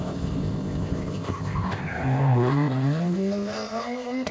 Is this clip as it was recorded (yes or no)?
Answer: no